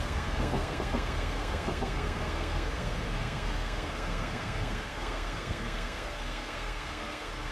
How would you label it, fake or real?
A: fake